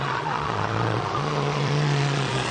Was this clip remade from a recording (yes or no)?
yes